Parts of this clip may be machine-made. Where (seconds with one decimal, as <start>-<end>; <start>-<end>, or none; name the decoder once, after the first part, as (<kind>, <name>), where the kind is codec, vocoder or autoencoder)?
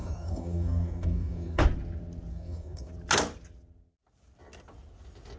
0.0-1.6 (codec, DAC); 2.3-2.9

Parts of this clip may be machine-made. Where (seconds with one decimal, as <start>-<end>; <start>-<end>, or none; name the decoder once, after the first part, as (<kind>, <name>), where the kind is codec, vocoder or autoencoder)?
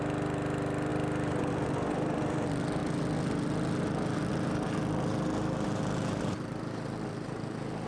none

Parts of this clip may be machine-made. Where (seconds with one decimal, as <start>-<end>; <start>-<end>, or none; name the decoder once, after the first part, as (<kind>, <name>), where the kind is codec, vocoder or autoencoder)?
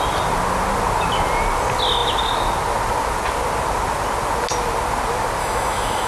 5.4-6.1 (autoencoder, DAC-VAE)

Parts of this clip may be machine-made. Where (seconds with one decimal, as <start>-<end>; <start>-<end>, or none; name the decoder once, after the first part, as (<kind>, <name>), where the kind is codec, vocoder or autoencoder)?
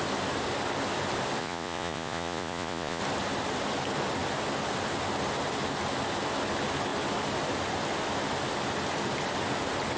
1.4-3.0 (vocoder, Vocos)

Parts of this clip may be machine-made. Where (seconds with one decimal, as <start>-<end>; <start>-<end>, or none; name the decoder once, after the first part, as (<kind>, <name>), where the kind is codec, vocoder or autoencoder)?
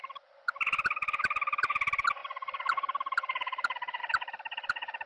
none